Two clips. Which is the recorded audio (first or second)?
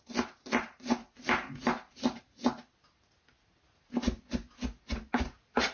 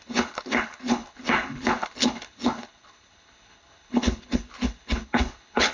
first